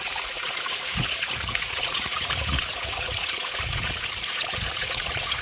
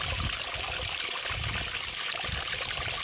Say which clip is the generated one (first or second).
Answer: first